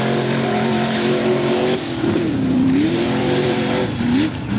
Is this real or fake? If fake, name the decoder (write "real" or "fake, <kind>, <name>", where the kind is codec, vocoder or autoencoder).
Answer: fake, vocoder, BigVGAN v2